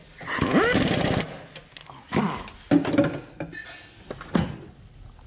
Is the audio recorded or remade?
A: recorded